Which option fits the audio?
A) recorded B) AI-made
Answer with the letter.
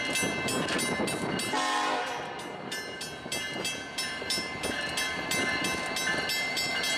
A